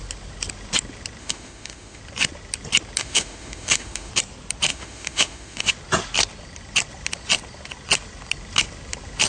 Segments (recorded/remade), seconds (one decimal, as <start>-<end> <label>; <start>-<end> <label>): 0.0-1.2 recorded; 1.2-2.0 remade; 2.0-3.0 recorded; 3.0-4.1 remade; 4.1-4.7 recorded; 4.7-5.7 remade; 5.7-9.3 recorded

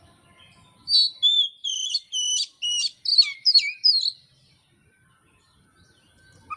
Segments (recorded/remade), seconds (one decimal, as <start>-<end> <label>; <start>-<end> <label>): 0.0-1.6 recorded; 1.6-2.1 remade; 2.1-3.1 recorded; 3.1-3.9 remade; 3.9-6.6 recorded

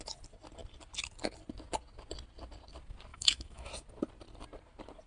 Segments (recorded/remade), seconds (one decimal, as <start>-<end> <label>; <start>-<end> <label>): 0.0-3.1 recorded; 3.1-3.7 remade; 3.7-5.1 recorded

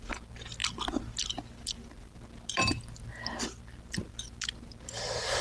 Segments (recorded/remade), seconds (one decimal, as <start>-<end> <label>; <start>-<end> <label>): 0.0-5.4 recorded

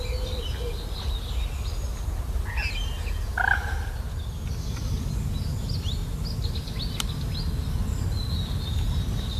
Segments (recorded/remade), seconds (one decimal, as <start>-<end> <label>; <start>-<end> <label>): 0.0-9.4 recorded

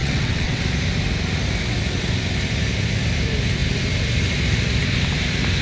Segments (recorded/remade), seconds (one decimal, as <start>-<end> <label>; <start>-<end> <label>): 0.0-0.6 remade; 0.6-5.6 recorded